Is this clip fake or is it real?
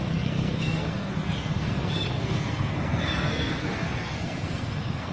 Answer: fake